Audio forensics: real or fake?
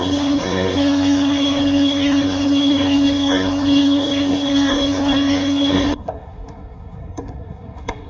fake